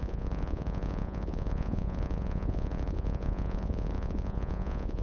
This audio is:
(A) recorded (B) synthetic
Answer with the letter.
B